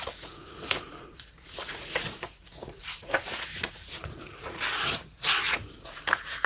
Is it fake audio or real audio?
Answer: fake